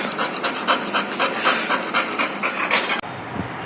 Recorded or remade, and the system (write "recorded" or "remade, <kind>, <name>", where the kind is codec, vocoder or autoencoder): recorded